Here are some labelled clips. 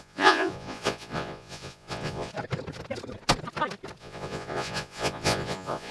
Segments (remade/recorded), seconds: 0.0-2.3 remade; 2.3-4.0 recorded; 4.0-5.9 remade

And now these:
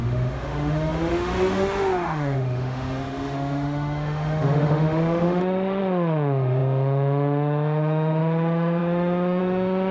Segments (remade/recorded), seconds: 0.0-9.9 remade

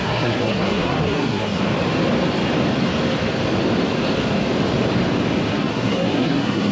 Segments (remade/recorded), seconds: 0.0-1.6 remade; 1.6-5.5 recorded; 5.5-6.7 remade

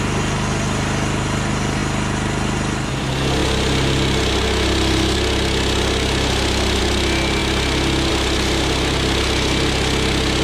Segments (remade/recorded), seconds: 0.0-10.4 recorded

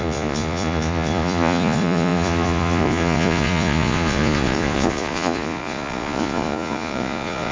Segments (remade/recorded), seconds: 0.0-7.5 remade

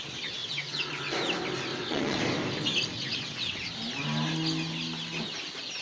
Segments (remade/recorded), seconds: 0.0-0.4 recorded; 0.4-1.0 remade; 1.0-1.7 recorded; 1.7-2.2 remade; 2.2-2.9 recorded; 2.9-3.7 remade; 3.7-5.8 recorded